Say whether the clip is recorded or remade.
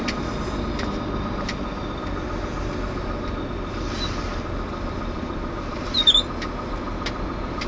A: recorded